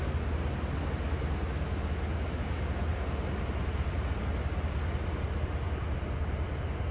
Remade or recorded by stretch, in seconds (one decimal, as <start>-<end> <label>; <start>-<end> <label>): 0.0-2.9 recorded; 2.9-4.3 remade; 4.3-6.9 recorded